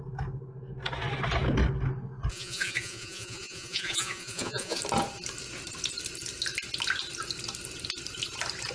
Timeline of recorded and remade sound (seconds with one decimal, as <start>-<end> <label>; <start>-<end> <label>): 0.0-2.3 recorded; 2.3-4.8 remade; 4.8-8.7 recorded